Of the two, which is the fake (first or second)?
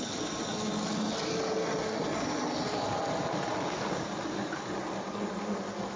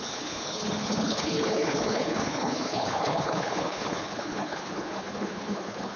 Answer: second